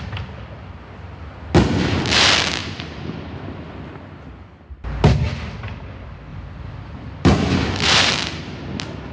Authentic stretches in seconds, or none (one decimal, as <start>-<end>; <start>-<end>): 0.0-2.6; 3.7-6.3; 8.4-9.1